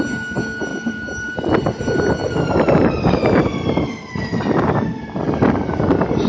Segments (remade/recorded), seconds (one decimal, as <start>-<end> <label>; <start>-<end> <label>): 0.0-0.7 recorded; 0.7-1.8 remade; 1.8-2.2 recorded; 2.2-5.2 remade; 5.2-6.3 recorded